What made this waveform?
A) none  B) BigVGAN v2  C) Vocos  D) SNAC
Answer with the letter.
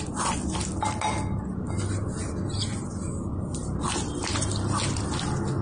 A